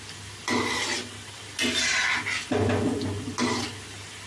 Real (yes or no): yes